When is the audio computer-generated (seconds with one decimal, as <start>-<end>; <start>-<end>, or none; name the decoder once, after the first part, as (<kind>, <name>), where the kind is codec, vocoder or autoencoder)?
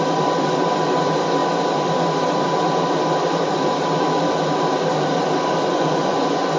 5.7-6.6 (vocoder, Vocos)